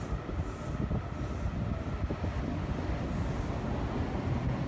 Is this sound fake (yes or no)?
no